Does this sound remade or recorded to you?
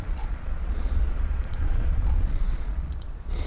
remade